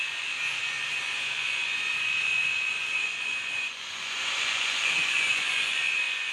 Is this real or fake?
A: fake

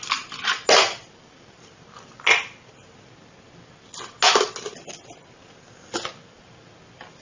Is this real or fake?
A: real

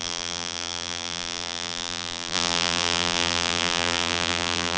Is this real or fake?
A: fake